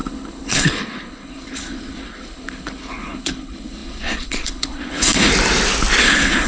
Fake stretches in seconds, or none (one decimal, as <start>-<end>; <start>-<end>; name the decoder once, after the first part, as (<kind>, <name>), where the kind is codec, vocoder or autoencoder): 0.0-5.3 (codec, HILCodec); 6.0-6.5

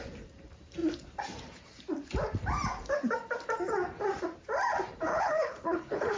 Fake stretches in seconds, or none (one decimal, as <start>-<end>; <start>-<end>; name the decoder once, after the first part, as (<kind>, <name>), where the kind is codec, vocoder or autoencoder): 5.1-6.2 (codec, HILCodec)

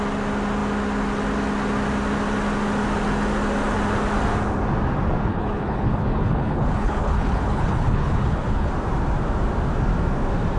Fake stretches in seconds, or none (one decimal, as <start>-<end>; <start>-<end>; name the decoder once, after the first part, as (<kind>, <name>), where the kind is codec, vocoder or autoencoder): 5.3-8.7 (codec, HILCodec)